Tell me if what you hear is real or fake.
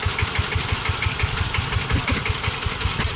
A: real